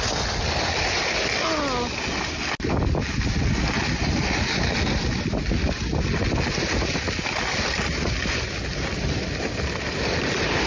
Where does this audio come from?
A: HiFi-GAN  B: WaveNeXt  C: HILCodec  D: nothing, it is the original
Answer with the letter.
D